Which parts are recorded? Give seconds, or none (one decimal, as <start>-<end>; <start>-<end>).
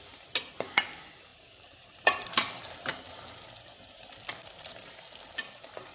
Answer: 0.0-1.3; 3.2-5.9